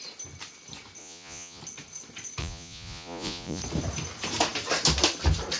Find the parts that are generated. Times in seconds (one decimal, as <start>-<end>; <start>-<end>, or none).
1.0-1.6; 2.4-3.6